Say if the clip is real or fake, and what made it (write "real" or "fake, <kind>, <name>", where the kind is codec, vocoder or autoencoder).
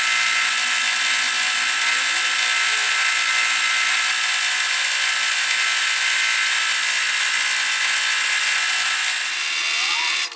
real